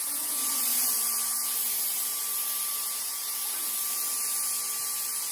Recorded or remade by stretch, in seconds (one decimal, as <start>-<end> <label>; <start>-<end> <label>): 0.0-0.7 recorded; 0.7-3.9 remade; 3.9-5.3 recorded